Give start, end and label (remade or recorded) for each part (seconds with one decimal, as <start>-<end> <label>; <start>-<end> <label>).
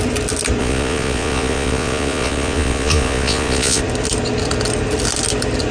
0.0-0.6 recorded; 0.6-3.8 remade; 3.8-5.7 recorded